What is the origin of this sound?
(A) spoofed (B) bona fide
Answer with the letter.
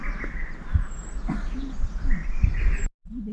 B